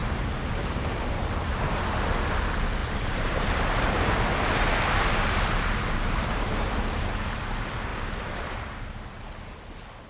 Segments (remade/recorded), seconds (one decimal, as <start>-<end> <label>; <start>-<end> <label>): 0.0-1.6 remade; 1.6-2.8 recorded; 2.8-6.6 remade; 6.6-7.9 recorded; 7.9-8.5 remade; 8.5-10.1 recorded

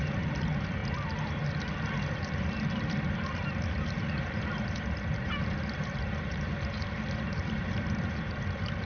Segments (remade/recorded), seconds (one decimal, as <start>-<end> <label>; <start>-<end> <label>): 0.0-0.8 remade; 0.8-2.2 recorded; 2.2-8.8 remade

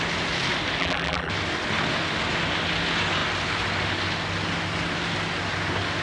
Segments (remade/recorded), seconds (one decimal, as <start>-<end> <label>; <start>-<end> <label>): 0.0-0.8 recorded; 0.8-1.3 remade; 1.3-6.0 recorded